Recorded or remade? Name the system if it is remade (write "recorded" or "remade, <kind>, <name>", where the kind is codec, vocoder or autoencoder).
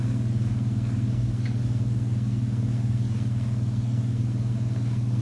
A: remade, codec, SNAC